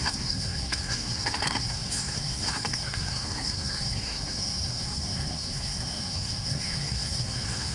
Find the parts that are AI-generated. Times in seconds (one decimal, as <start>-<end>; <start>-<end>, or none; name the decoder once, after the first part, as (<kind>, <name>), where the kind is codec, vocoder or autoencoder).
0.0-7.7 (codec, SNAC)